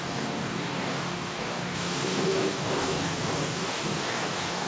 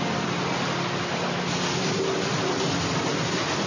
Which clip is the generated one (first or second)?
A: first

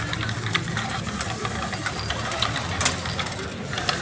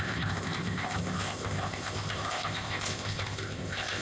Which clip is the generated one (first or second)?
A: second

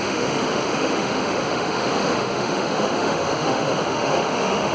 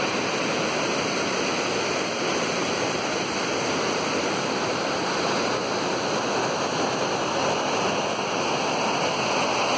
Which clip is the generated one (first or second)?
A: first